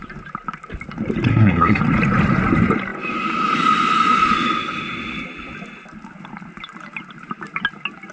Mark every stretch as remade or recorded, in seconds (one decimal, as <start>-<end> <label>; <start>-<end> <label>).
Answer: 0.0-1.3 recorded; 1.3-1.8 remade; 1.8-8.1 recorded